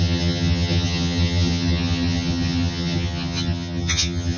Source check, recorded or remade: remade